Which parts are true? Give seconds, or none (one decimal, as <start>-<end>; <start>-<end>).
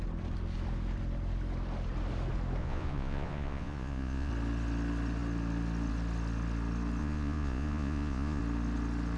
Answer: 0.0-2.6; 4.3-7.0; 8.4-9.2